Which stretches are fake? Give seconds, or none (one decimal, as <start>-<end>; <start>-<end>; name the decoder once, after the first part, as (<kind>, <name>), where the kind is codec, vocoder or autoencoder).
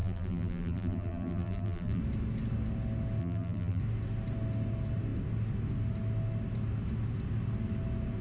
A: 0.0-2.0 (vocoder, BigVGAN v2); 3.2-3.8